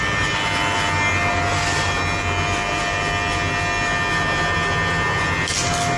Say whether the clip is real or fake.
real